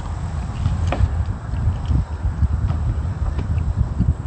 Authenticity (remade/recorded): recorded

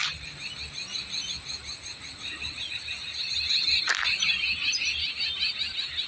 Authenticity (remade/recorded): recorded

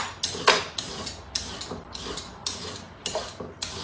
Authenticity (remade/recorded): recorded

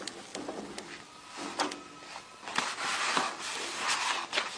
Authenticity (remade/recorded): recorded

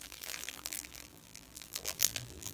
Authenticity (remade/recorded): remade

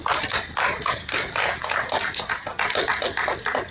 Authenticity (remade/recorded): recorded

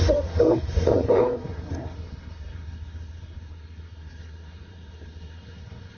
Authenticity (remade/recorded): remade